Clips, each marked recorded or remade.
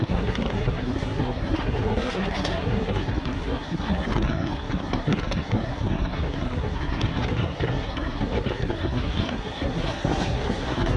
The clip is remade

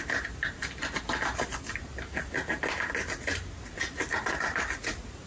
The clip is recorded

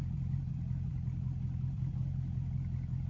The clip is recorded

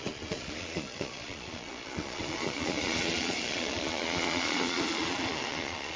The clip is remade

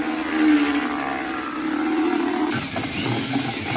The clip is recorded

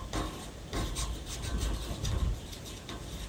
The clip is recorded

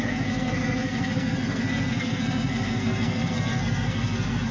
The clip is remade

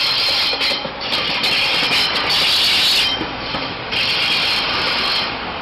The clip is recorded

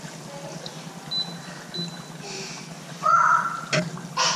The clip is recorded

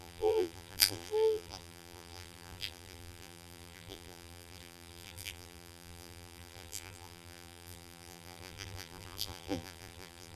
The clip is remade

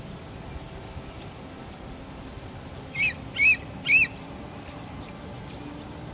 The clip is recorded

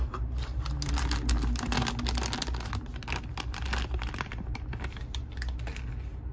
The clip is recorded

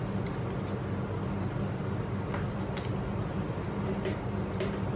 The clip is recorded